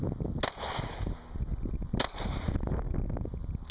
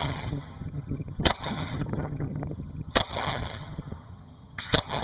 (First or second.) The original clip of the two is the first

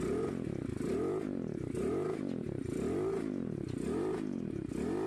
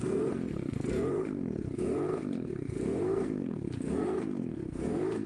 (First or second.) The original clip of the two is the first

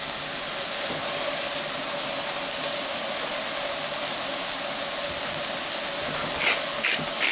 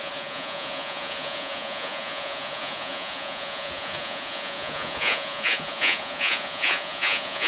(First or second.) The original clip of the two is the first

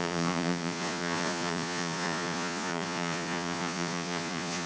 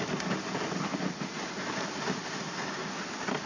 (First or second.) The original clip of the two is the second